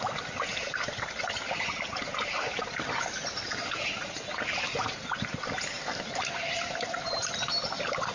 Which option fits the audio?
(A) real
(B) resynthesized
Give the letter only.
A